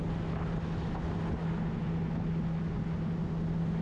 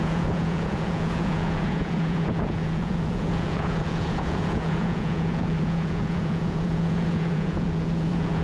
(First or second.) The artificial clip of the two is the second